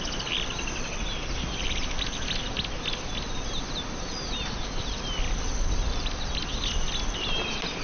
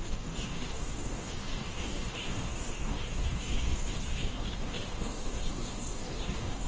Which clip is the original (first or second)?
first